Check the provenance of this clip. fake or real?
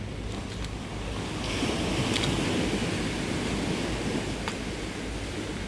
real